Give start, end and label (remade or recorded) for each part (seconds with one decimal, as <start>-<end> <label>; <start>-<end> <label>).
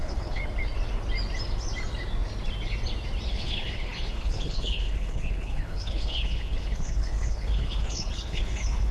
0.0-0.4 remade; 0.4-3.3 recorded; 3.3-8.9 remade